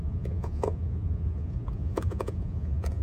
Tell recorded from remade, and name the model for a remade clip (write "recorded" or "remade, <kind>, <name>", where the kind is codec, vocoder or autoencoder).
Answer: remade, vocoder, Vocos